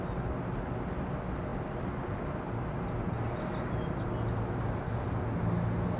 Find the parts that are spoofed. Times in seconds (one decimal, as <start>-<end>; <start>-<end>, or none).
none